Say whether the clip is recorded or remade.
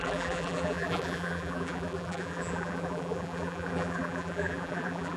remade